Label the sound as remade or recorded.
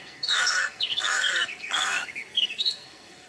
remade